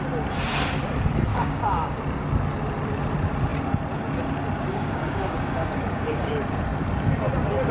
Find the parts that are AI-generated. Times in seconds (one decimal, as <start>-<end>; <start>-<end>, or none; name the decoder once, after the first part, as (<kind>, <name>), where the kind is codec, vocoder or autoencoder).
1.3-2.0 (codec, DAC); 4.7-6.3